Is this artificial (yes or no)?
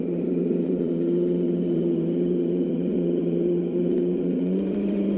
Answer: yes